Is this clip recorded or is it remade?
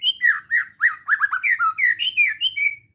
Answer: recorded